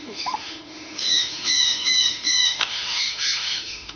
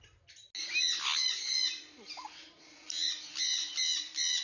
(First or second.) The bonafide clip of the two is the second